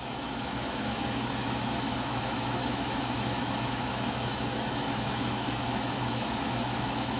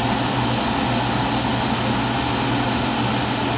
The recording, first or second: second